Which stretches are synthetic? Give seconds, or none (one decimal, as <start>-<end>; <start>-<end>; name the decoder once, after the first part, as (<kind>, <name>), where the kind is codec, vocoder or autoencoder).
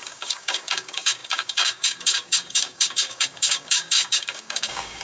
0.0-5.0 (codec, DAC)